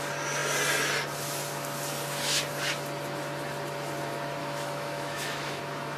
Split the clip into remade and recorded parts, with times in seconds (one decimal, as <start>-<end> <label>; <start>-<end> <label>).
0.0-4.4 recorded; 4.4-5.6 remade; 5.6-6.0 recorded